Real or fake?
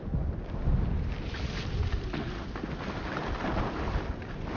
real